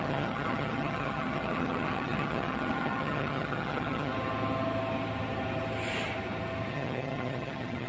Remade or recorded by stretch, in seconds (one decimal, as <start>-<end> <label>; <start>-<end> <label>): 0.0-4.1 remade; 4.1-6.7 recorded; 6.7-7.9 remade